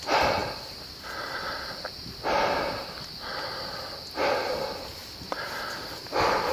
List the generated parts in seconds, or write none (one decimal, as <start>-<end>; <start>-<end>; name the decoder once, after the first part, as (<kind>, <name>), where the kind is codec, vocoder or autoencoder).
none